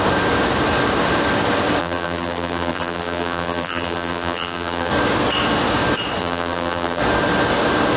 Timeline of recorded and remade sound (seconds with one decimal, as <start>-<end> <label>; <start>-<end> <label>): 0.0-1.8 recorded; 1.8-4.9 remade; 4.9-6.2 recorded; 6.2-7.0 remade; 7.0-8.0 recorded